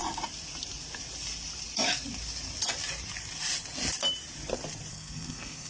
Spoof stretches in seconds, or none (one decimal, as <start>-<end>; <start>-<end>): 4.9-5.7